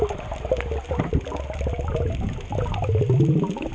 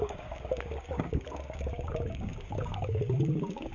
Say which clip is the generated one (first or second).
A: second